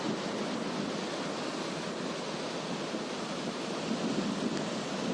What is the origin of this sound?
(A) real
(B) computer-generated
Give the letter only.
A